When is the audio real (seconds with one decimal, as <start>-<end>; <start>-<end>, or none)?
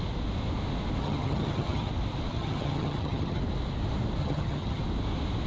0.0-1.0; 1.9-2.3; 3.4-4.2; 4.8-5.5